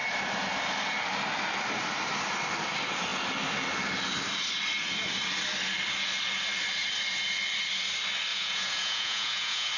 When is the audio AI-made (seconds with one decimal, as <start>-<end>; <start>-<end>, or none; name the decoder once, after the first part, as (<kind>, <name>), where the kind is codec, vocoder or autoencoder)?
8.3-9.8 (vocoder, Vocos)